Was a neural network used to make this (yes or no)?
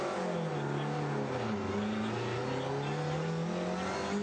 no